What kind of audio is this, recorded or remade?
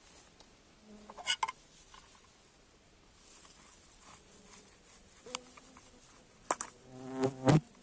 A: recorded